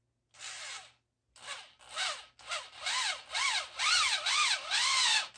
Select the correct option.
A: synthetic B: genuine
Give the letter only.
B